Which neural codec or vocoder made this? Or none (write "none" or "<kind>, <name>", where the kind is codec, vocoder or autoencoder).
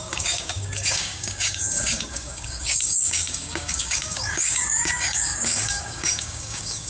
codec, DAC